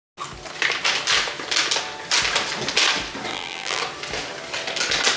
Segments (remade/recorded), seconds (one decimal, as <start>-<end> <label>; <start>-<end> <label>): 0.0-3.3 recorded; 3.3-3.8 remade; 3.8-5.2 recorded